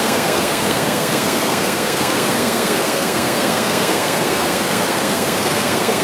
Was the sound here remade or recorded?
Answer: remade